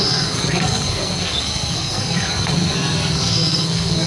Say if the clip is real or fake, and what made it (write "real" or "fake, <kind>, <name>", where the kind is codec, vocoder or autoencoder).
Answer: fake, codec, SNAC